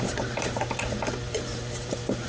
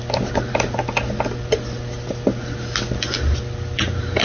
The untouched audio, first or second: second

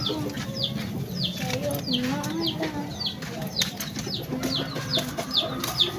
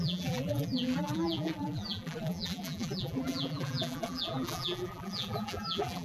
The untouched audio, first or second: first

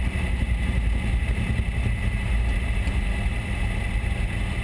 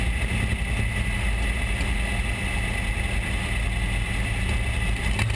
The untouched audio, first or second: second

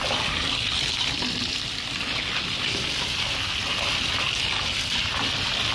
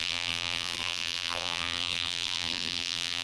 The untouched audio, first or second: first